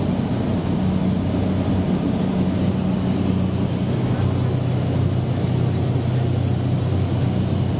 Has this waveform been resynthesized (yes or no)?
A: no